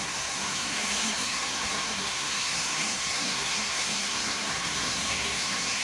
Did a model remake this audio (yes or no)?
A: yes